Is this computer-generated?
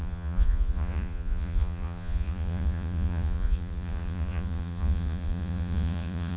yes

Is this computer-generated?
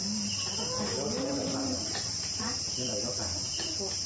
yes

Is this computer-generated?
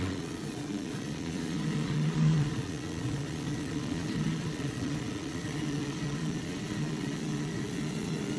yes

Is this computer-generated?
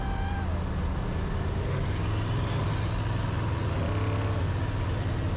no